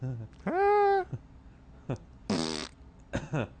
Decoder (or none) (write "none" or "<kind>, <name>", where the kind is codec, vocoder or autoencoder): none